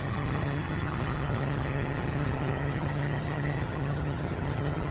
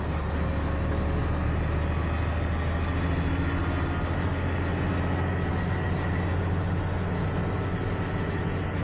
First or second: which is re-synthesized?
first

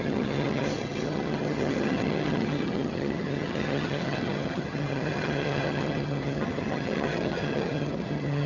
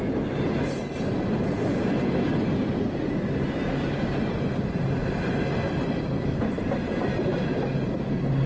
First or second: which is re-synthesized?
first